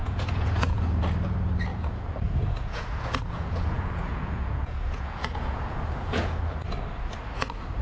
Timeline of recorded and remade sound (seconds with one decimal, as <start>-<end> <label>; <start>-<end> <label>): 0.0-1.0 remade; 1.0-1.7 recorded; 1.7-6.4 remade; 6.4-7.8 recorded